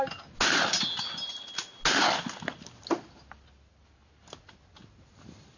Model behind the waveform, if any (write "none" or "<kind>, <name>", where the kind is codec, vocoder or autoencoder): none